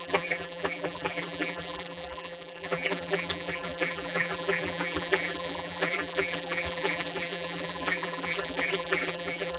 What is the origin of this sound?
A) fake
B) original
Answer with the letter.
A